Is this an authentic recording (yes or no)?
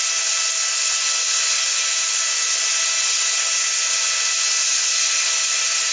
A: yes